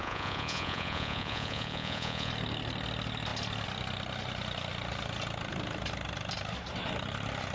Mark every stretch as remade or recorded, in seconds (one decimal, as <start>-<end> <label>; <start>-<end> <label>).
0.0-2.3 remade; 2.3-7.5 recorded